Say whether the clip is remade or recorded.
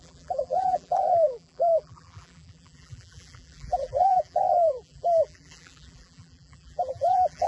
remade